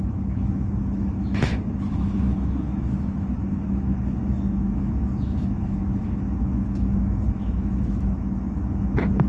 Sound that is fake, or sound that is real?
fake